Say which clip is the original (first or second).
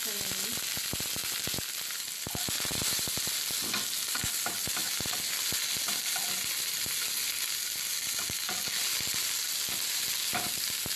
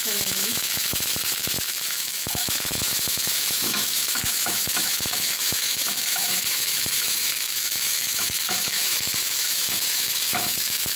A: first